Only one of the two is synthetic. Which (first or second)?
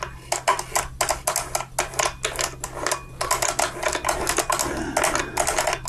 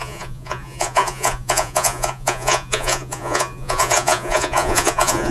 second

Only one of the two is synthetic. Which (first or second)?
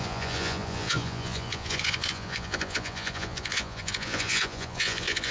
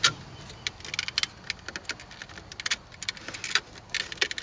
first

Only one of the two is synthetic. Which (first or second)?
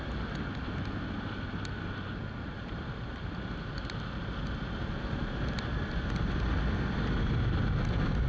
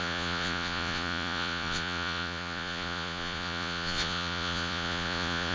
second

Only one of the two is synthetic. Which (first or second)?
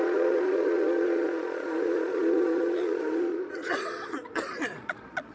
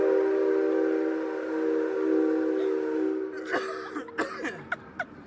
first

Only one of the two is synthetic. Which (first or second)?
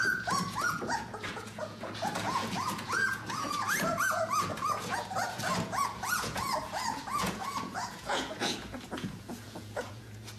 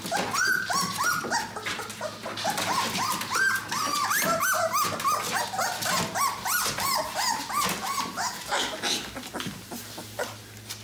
first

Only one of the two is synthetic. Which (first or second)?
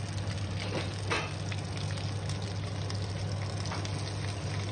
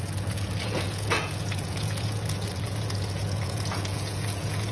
second